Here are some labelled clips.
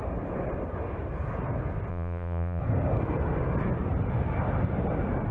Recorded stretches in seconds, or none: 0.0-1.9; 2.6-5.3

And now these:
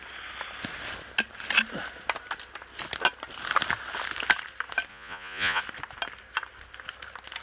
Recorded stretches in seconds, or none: 0.0-4.9; 5.6-7.4

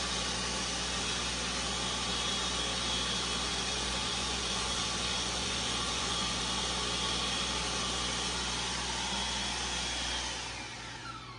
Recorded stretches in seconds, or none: 0.0-3.5; 6.4-11.4

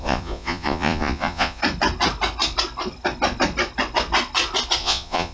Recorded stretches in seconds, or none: 1.6-4.8

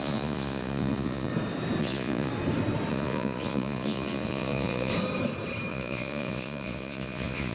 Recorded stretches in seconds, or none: 1.3-1.8; 2.3-2.9; 4.9-5.7